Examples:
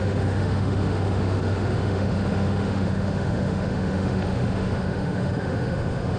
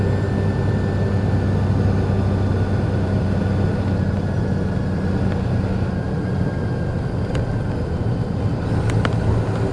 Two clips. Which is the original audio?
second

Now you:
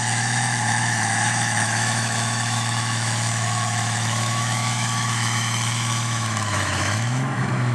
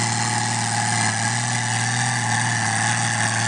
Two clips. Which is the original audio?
second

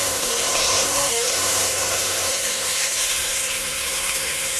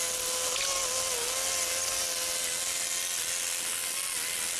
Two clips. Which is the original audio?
second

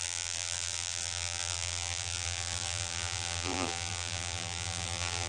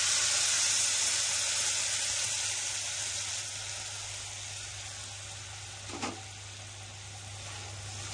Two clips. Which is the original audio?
second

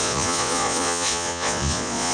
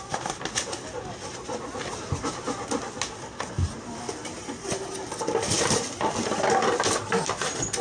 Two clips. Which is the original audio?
second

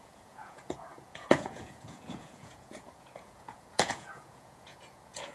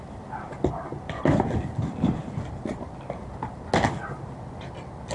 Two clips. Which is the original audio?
second